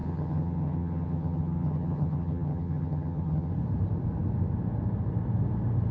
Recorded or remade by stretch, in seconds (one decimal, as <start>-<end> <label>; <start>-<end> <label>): 0.0-3.5 remade; 3.5-5.9 recorded